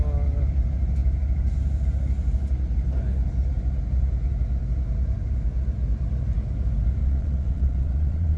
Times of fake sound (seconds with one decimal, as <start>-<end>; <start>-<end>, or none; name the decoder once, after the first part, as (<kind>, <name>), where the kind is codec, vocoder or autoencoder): 7.0-8.4 (vocoder, Vocos)